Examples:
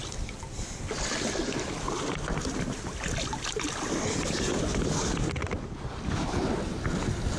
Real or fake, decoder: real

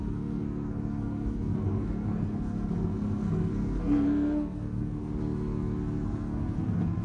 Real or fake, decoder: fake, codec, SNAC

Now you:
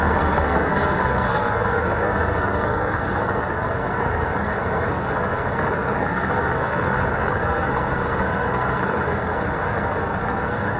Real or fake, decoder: fake, codec, SNAC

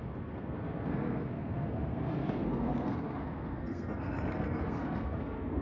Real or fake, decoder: fake, codec, SNAC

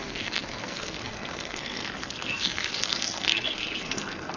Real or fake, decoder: fake, codec, SNAC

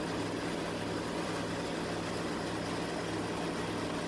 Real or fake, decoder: real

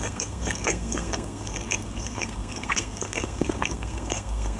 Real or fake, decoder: fake, codec, SNAC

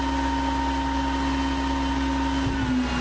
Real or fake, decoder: real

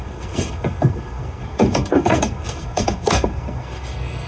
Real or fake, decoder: fake, codec, SNAC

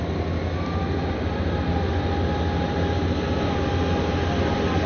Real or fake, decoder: real